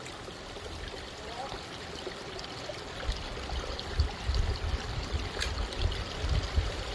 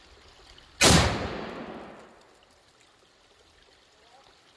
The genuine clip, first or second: second